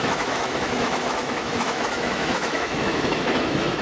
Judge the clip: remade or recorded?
remade